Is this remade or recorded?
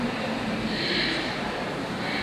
remade